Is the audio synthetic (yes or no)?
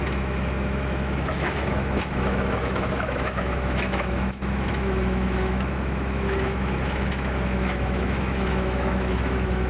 yes